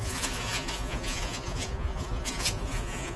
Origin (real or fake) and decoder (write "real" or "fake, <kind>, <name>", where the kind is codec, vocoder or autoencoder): fake, vocoder, Vocos